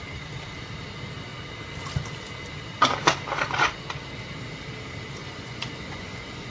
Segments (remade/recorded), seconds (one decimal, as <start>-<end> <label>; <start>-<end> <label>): 0.0-5.2 recorded; 5.2-6.5 remade